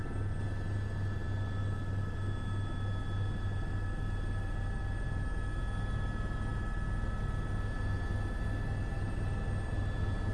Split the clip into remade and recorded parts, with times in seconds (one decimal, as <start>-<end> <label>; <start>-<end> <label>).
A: 0.0-10.3 recorded